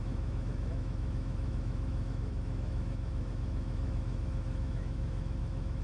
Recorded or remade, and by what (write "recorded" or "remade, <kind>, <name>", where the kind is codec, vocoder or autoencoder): remade, autoencoder, DAC-VAE